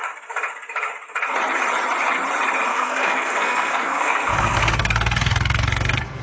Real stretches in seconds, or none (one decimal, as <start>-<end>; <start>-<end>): 0.0-2.7